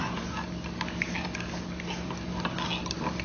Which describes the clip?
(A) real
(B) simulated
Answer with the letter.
A